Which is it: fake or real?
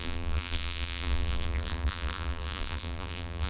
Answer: fake